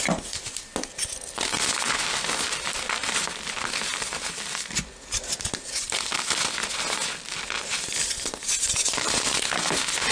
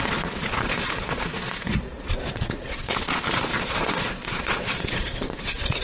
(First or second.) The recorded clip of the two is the first